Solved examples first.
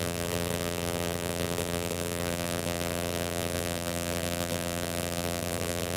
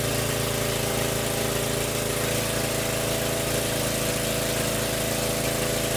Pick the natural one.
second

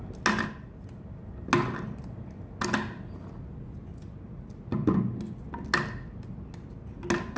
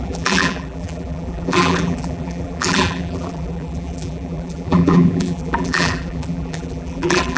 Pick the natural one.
first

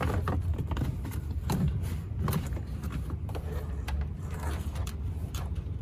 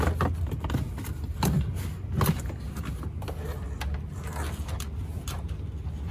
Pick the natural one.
second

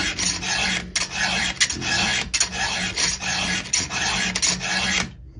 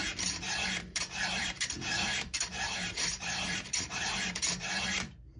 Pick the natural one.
first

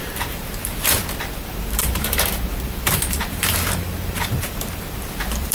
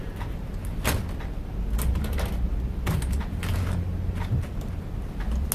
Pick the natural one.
second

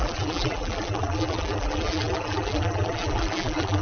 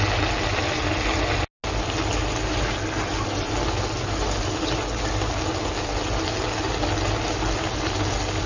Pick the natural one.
second